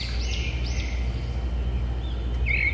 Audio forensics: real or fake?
real